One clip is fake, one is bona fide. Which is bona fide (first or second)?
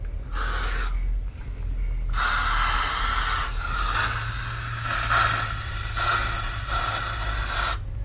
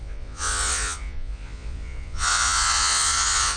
first